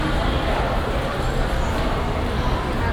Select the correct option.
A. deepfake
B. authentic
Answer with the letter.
B